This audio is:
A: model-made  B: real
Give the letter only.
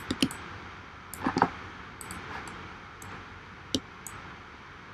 B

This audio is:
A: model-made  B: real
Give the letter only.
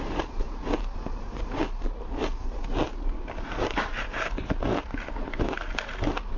B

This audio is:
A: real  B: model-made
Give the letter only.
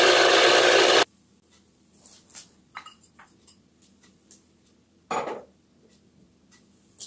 A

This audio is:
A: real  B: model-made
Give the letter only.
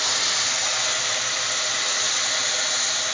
A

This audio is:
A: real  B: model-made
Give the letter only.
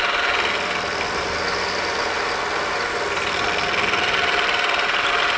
A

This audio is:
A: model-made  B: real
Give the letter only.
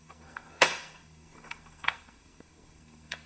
A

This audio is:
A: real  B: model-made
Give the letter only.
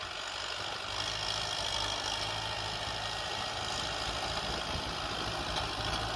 A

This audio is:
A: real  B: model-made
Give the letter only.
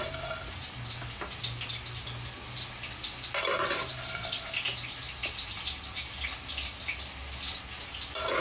A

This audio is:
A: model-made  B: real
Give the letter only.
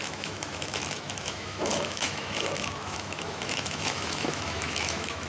A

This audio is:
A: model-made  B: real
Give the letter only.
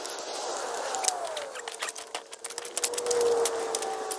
B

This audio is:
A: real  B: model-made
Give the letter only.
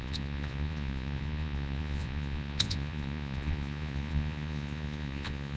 B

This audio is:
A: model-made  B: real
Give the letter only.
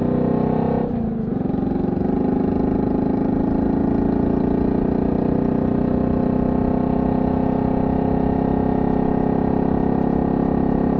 B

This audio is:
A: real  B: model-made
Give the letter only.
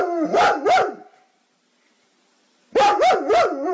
A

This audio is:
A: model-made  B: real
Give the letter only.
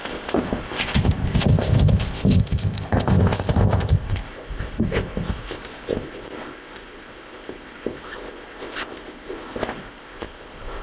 A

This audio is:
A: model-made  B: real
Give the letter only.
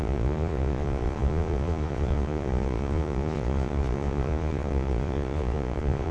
A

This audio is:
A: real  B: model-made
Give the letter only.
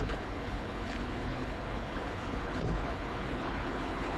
B